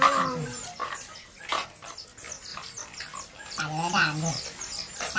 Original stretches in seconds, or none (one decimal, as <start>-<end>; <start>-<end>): 0.0-0.8; 1.4-2.5; 3.6-5.2

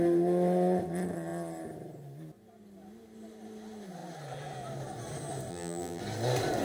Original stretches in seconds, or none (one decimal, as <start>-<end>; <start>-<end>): 0.0-5.5; 6.0-6.6

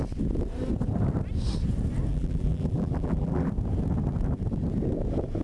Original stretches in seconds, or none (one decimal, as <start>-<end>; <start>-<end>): 0.0-2.1; 3.5-5.4